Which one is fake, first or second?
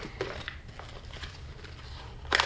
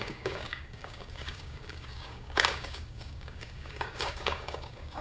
second